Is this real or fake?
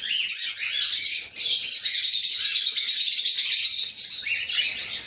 real